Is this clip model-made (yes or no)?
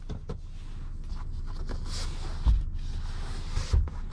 no